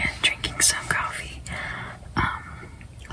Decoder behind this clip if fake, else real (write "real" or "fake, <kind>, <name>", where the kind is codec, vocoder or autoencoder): real